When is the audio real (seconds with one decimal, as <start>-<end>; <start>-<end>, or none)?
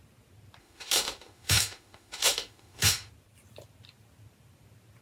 0.0-0.6; 3.1-5.0